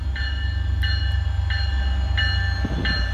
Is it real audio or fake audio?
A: real